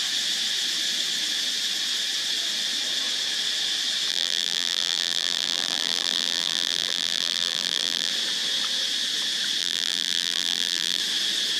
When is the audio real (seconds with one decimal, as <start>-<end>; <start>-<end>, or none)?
0.0-4.1; 8.1-9.6; 11.0-11.6